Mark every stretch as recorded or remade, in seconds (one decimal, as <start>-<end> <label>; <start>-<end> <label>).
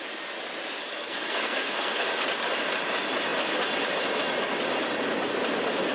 0.0-0.9 recorded; 0.9-2.2 remade; 2.2-5.9 recorded